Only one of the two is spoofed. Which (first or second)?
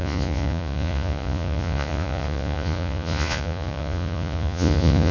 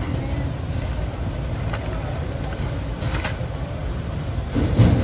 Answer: first